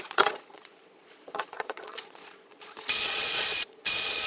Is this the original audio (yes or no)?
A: no